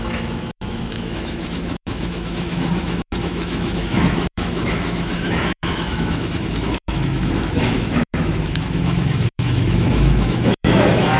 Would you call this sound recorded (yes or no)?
no